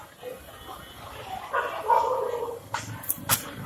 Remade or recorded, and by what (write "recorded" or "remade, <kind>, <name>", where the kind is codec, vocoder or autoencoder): recorded